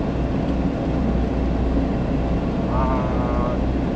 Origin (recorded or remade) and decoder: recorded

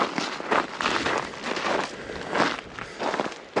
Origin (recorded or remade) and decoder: recorded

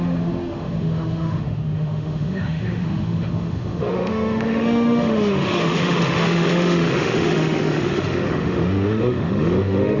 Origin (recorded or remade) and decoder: remade, autoencoder, DAC-VAE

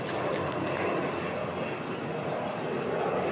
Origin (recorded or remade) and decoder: recorded